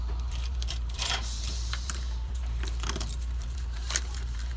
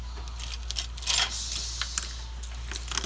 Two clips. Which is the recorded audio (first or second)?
second